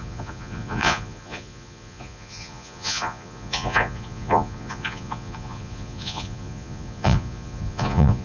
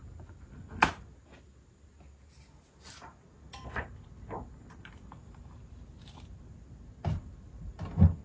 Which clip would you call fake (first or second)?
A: first